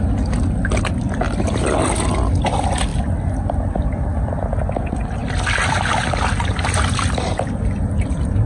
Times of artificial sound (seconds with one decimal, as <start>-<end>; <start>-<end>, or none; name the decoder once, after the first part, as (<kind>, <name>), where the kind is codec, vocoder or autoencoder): none